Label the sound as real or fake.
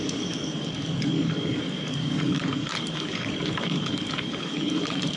fake